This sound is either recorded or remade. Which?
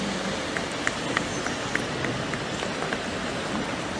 recorded